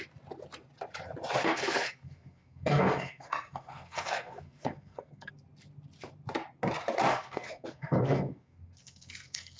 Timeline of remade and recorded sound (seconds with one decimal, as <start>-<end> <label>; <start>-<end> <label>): 0.0-1.4 recorded; 1.4-5.3 remade; 5.3-7.1 recorded; 7.1-9.6 remade